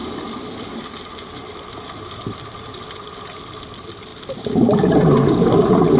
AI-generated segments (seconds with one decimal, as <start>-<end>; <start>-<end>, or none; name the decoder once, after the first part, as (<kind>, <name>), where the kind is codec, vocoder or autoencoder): 0.0-2.9 (vocoder, BigVGAN v2)